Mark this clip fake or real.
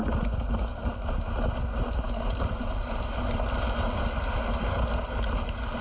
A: real